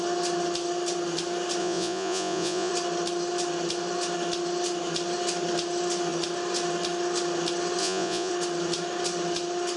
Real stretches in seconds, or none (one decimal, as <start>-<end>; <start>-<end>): 0.0-1.6; 2.7-7.8; 8.3-9.8